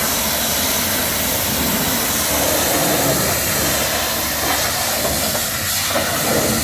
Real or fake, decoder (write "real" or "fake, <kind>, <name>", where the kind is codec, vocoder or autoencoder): real